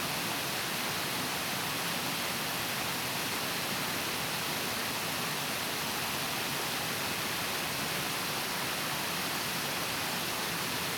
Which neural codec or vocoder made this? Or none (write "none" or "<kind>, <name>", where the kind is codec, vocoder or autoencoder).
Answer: none